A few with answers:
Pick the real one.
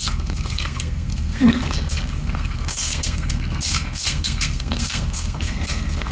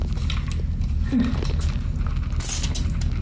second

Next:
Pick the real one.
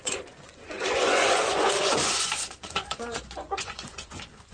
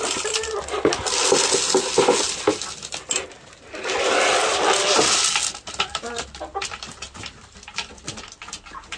second